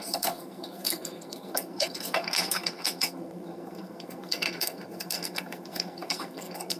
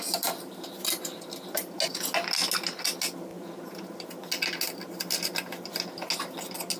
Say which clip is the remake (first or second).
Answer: first